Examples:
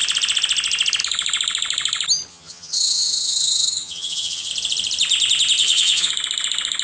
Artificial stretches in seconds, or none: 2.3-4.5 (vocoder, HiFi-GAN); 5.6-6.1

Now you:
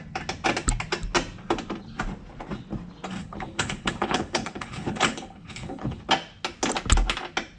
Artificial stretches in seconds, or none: 3.2-6.0 (codec, HILCodec)

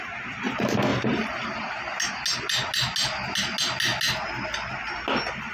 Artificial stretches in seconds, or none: 0.9-1.8 (vocoder, BigVGAN v2)

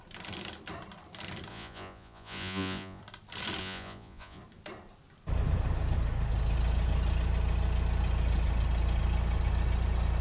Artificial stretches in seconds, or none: 1.5-3.0 (vocoder, Vocos); 3.6-4.4

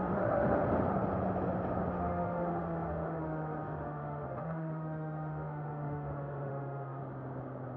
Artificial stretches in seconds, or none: 0.0-0.6 (autoencoder, DAC-VAE); 1.9-7.0

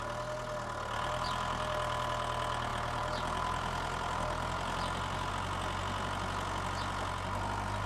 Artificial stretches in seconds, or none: 2.7-5.3 (vocoder, BigVGAN v2)